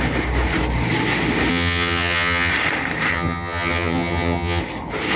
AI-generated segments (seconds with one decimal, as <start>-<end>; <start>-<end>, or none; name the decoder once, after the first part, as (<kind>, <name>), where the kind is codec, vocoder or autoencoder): 1.5-2.5 (vocoder, HiFi-GAN); 3.1-4.6